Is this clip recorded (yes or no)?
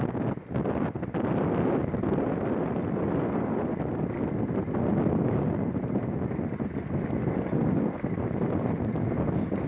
yes